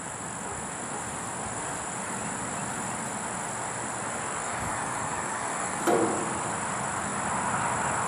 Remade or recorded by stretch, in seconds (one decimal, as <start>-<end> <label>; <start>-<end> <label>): 0.0-4.4 recorded; 4.4-5.8 remade; 5.8-8.1 recorded